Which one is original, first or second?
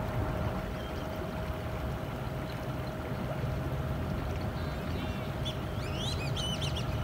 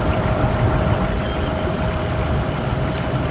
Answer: first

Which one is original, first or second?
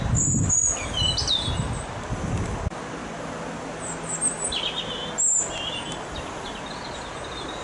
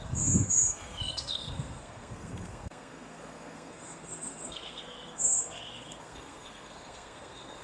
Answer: first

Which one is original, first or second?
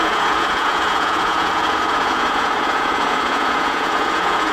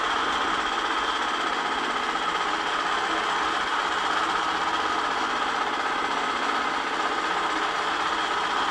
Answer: second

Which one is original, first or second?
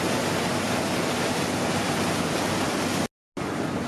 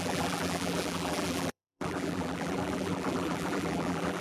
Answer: first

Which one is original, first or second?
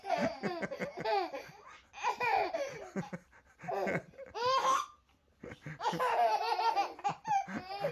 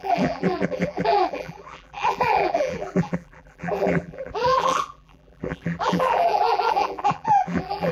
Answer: first